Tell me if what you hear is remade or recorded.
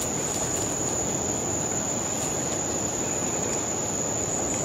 recorded